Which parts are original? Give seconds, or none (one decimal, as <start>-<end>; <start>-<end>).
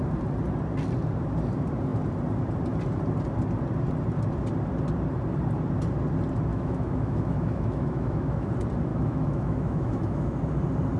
0.0-6.5; 8.5-8.9; 10.4-11.0